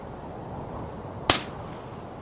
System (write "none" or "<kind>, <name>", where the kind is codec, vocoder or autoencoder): none